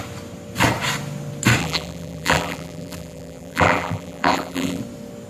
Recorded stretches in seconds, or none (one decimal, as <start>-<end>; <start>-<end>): 0.0-1.6; 4.8-5.3